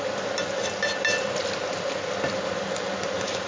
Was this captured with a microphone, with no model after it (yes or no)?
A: yes